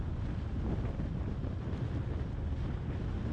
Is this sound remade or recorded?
recorded